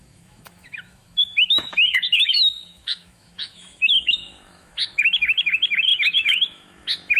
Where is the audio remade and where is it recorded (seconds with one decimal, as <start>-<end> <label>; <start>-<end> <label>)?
0.0-7.2 remade